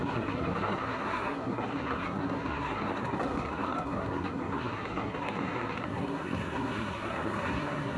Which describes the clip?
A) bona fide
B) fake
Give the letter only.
B